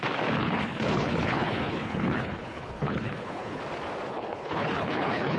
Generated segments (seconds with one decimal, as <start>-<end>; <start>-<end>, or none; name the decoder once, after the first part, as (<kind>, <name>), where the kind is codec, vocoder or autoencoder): 0.4-3.6 (codec, HILCodec); 4.1-5.4

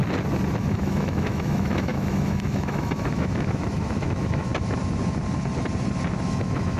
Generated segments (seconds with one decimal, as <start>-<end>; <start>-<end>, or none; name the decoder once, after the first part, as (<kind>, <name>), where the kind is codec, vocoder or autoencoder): 0.6-4.5 (autoencoder, DAC-VAE); 6.3-6.8

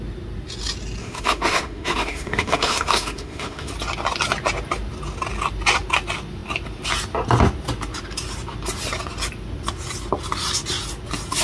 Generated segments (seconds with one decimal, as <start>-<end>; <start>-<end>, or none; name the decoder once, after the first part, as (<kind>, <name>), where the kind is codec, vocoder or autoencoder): 1.0-3.7 (autoencoder, DAC-VAE)

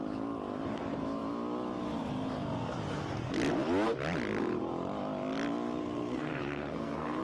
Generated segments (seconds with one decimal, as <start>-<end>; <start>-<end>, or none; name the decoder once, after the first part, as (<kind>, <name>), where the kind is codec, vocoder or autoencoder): 5.8-7.2 (codec, SNAC)